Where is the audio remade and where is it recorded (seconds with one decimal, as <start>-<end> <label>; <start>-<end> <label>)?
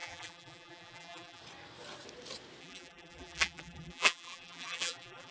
0.0-1.4 remade; 1.4-2.6 recorded; 2.6-5.3 remade